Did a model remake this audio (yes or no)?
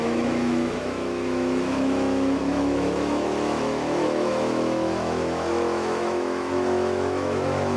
yes